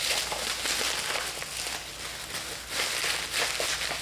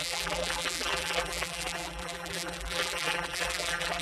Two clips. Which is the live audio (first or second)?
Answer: first